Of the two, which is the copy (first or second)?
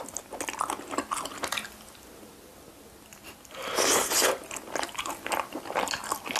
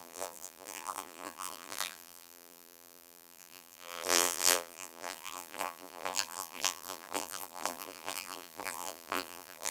second